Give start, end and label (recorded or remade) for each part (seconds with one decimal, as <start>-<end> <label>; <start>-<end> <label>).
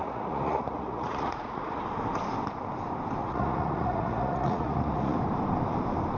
0.0-1.8 remade; 1.8-3.2 recorded; 3.2-5.2 remade; 5.2-6.2 recorded